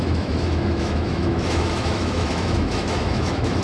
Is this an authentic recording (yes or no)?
no